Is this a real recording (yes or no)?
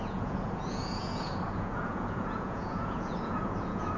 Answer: no